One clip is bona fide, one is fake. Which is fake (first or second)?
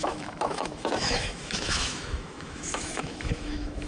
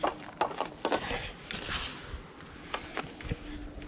first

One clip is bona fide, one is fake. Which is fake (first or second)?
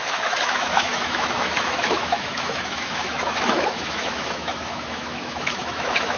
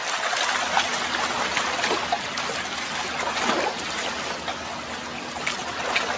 first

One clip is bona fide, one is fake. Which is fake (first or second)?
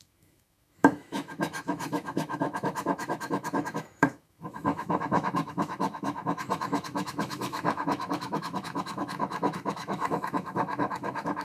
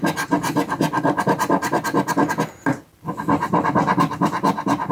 first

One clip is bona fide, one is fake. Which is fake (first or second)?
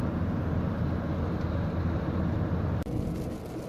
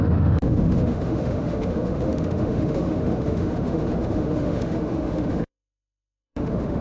second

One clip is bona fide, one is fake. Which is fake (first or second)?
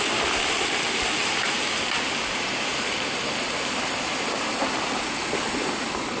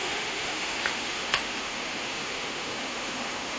second